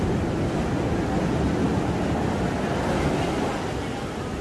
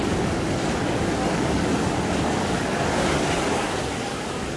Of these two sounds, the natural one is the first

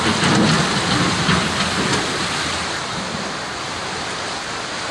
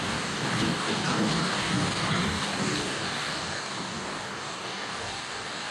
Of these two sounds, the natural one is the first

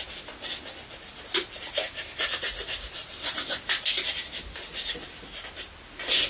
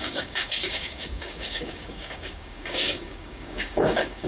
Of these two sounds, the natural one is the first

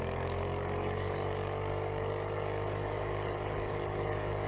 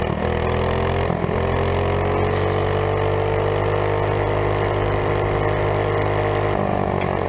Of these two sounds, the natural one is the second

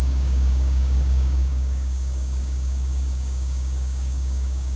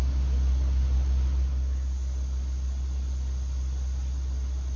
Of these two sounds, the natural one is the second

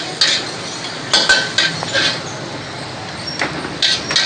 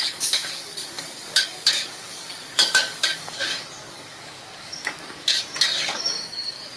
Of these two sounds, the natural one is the first